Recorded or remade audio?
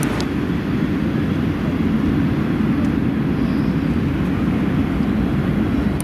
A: recorded